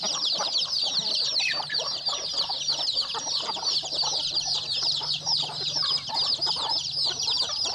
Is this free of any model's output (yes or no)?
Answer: no